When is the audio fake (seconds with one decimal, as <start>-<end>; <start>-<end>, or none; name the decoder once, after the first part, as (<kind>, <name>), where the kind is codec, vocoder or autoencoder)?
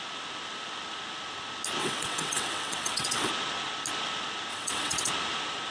1.8-3.3 (vocoder, WaveNeXt); 4.5-5.1